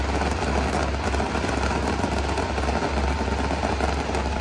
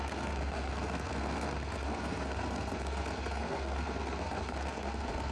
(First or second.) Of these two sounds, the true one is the first